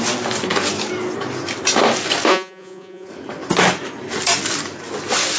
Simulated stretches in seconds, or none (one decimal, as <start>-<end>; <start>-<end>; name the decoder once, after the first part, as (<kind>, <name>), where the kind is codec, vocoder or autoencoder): 2.3-3.1 (vocoder, Vocos)